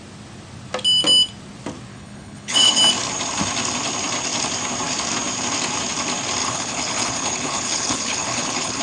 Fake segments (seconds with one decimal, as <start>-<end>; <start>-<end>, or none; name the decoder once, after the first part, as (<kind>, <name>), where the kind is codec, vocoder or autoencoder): 1.9-2.8 (codec, HILCodec); 6.4-8.8